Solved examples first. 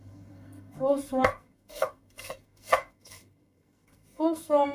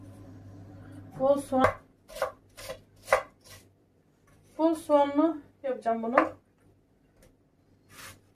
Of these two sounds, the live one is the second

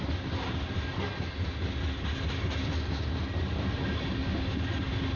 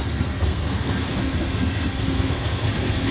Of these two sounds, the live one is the first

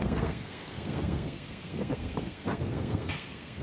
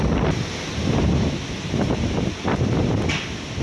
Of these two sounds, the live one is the second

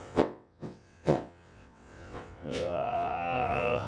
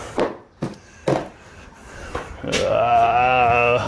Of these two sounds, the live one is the second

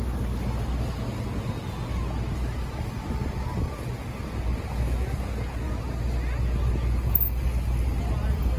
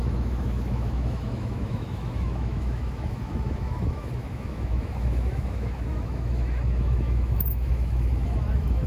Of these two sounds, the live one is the first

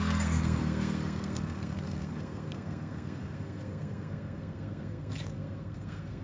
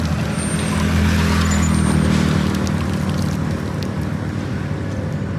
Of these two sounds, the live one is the second